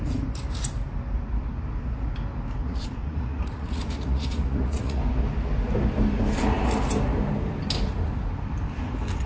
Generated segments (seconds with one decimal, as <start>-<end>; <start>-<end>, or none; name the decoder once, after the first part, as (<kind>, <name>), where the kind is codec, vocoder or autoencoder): 2.6-5.0 (vocoder, Vocos)